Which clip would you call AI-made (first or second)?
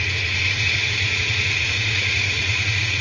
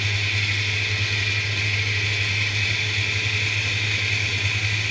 first